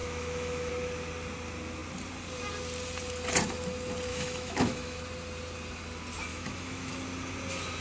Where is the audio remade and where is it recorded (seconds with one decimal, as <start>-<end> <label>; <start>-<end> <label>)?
0.0-0.7 remade; 0.7-4.1 recorded; 4.1-5.0 remade; 5.0-6.3 recorded; 6.3-6.9 remade; 6.9-7.8 recorded